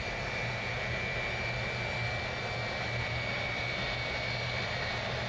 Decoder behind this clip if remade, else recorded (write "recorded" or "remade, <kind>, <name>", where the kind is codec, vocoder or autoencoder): recorded